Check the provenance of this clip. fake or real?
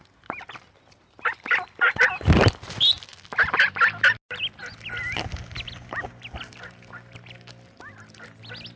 real